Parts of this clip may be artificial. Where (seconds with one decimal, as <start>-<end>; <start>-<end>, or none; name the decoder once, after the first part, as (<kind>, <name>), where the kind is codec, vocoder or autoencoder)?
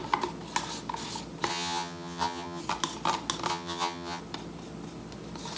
1.5-2.6 (vocoder, HiFi-GAN); 3.5-4.2